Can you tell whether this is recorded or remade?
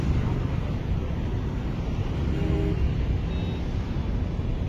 recorded